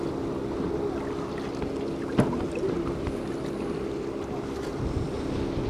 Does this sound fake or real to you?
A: real